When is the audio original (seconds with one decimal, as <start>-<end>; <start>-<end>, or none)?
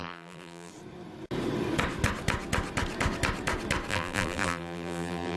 0.7-3.9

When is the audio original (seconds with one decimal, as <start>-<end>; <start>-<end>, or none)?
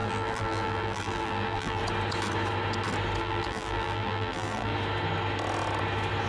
1.8-3.2; 4.7-6.3